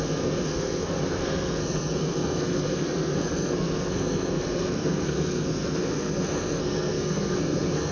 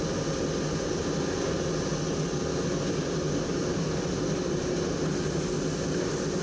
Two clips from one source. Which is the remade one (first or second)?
first